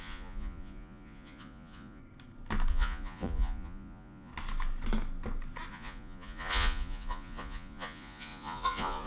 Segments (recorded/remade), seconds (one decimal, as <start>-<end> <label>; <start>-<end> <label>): 0.0-2.0 remade; 2.0-2.7 recorded; 2.7-4.3 remade; 4.3-5.7 recorded; 5.7-9.1 remade